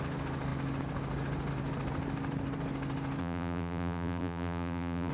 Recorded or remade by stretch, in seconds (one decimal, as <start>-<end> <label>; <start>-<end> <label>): 0.0-3.2 recorded; 3.2-5.1 remade